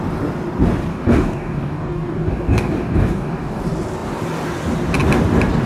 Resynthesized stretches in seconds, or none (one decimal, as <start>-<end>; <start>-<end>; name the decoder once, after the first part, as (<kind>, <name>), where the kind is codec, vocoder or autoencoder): 0.9-3.6 (codec, DAC)